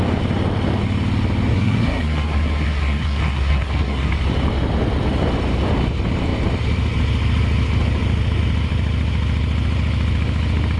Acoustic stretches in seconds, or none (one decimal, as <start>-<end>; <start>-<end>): 0.0-1.5; 4.1-10.8